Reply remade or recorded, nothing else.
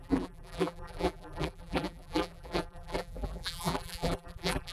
remade